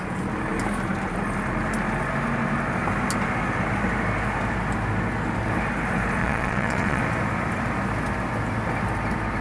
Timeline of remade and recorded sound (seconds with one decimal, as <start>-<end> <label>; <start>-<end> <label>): 0.0-6.2 recorded; 6.2-7.0 remade; 7.0-9.4 recorded